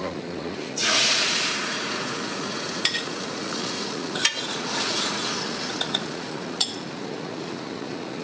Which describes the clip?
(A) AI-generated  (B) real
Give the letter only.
A